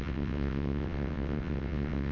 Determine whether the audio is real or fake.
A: fake